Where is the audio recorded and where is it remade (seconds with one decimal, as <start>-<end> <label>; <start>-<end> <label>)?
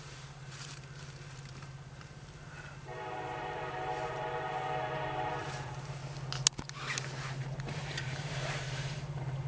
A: 0.0-6.0 remade; 6.0-7.4 recorded; 7.4-9.5 remade